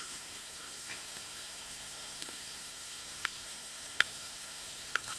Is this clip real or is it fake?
fake